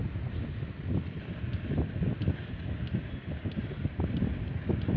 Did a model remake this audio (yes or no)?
no